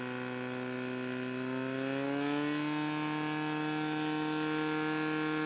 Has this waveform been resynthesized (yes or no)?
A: no